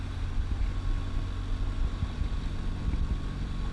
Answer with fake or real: real